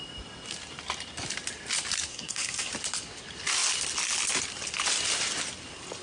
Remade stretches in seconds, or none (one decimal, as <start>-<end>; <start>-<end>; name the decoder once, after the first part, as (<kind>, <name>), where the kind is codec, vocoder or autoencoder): 2.1-2.7 (codec, SNAC)